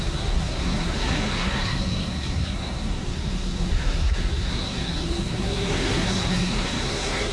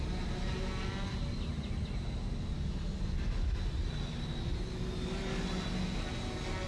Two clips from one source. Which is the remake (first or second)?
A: first